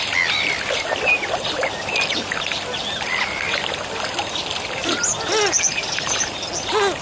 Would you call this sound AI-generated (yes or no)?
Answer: no